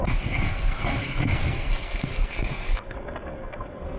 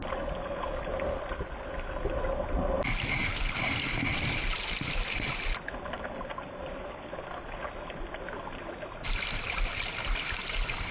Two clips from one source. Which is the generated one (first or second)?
first